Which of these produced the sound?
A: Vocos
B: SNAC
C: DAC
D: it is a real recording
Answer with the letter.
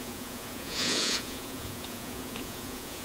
A